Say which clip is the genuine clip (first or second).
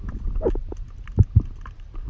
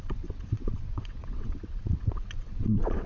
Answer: first